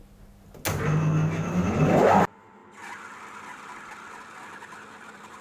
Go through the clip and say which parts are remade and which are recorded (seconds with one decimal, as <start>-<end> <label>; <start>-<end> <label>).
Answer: 0.0-5.4 recorded